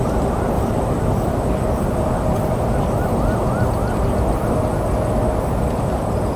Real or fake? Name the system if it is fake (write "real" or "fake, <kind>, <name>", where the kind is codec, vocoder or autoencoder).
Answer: real